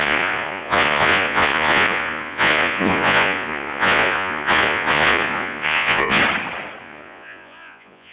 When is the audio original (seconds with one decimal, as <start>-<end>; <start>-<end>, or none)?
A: 6.2-6.8

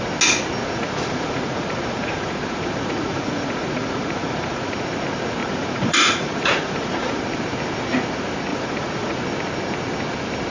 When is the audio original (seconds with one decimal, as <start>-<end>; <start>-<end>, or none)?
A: 0.0-0.6; 4.7-5.4; 7.2-8.5; 9.2-10.5